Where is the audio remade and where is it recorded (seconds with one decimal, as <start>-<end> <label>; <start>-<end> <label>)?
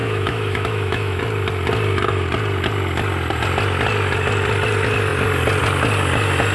0.0-1.2 remade; 1.2-6.5 recorded